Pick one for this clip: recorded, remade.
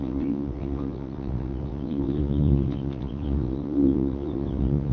remade